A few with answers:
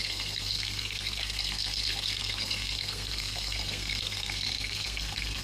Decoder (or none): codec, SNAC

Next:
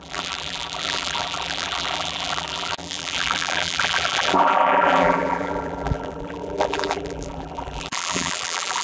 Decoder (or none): vocoder, BigVGAN v2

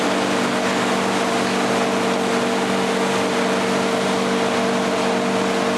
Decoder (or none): none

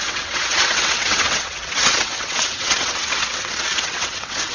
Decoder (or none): vocoder, WaveNeXt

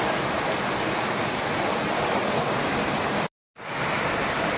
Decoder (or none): none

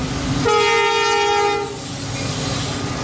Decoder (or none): none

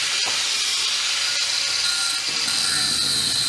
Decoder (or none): none